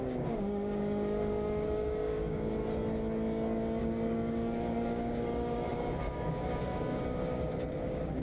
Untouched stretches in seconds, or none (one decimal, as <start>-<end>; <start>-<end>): 2.6-3.8